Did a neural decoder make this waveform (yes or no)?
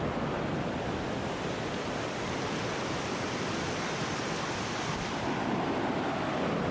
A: no